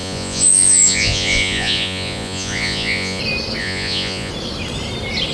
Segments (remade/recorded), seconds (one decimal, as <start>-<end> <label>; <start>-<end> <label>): 0.0-3.2 remade; 3.2-3.6 recorded; 3.6-4.3 remade; 4.3-5.3 recorded